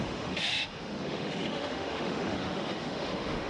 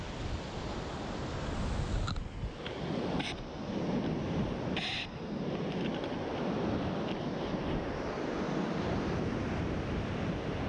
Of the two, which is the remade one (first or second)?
first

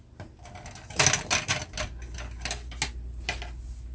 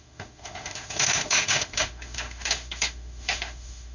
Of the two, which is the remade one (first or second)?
second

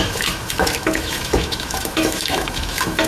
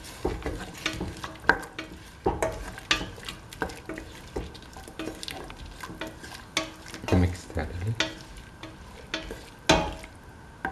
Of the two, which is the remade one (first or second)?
first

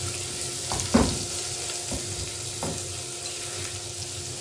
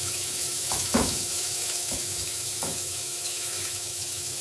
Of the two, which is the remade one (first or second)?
second